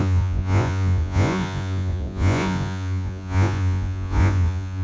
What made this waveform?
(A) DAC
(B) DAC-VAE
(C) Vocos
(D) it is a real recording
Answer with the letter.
C